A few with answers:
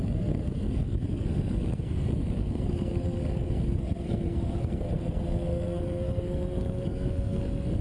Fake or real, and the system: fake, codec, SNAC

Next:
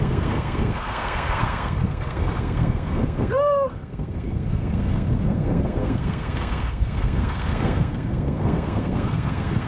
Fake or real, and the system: fake, codec, SNAC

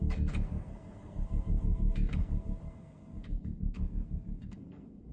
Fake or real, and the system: fake, codec, SNAC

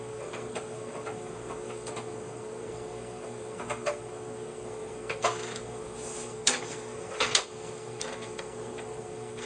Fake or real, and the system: fake, codec, SNAC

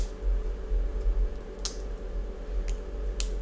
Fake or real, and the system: real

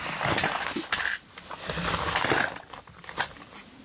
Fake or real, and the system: real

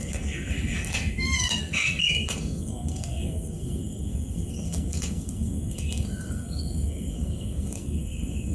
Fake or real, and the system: fake, codec, SNAC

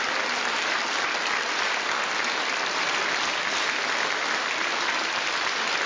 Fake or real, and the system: real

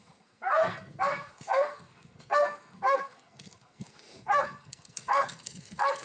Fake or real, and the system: fake, codec, SNAC